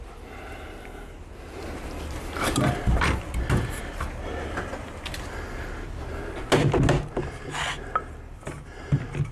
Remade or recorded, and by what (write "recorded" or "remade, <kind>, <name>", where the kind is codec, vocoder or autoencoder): recorded